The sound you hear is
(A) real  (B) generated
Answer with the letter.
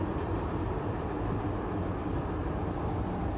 A